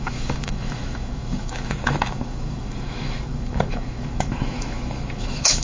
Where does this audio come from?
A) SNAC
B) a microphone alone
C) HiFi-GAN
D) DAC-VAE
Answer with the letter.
D